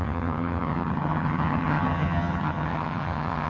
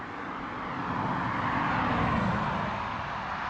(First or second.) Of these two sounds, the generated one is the first